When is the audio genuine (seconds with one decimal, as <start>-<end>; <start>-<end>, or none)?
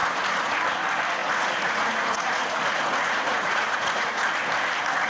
0.6-1.2; 4.3-5.1